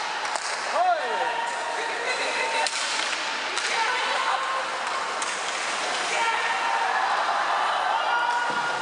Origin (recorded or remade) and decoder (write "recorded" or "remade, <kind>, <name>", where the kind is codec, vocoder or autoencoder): recorded